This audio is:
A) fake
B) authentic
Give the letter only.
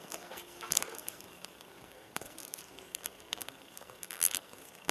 A